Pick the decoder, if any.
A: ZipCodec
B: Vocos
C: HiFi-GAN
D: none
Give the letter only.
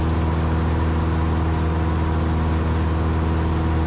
D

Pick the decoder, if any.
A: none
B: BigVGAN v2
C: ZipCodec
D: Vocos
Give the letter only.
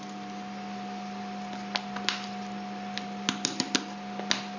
A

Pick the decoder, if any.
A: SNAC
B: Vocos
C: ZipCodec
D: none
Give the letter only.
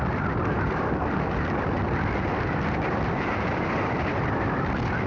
D